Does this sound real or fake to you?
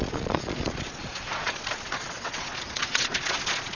fake